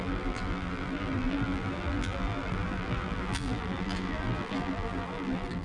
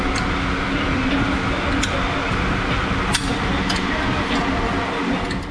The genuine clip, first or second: second